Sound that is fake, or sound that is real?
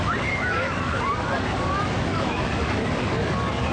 fake